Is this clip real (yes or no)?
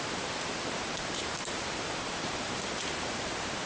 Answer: no